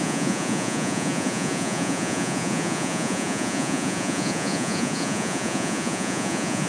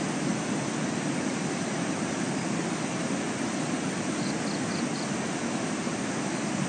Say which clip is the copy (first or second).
first